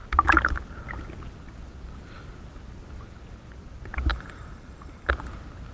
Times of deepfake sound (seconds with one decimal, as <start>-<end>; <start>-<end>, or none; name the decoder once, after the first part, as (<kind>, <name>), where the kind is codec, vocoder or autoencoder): 4.1-5.1 (vocoder, BigVGAN v2)